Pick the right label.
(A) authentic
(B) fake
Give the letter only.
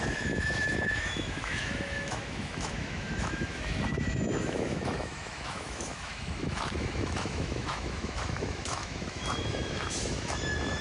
B